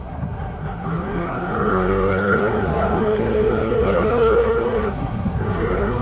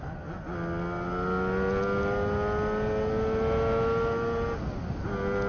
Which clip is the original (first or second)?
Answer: second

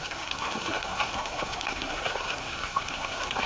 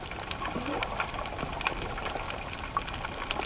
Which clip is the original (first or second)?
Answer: second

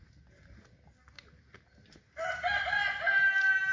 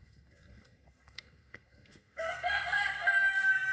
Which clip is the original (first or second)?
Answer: first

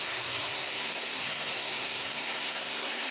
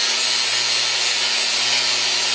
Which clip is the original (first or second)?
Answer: second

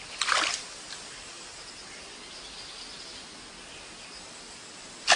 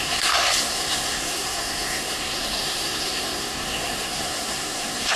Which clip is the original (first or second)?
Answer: first